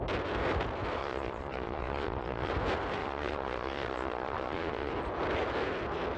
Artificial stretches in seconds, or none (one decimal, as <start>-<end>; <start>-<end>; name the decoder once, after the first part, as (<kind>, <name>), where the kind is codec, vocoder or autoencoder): 1.0-2.5 (vocoder, Vocos); 3.0-4.9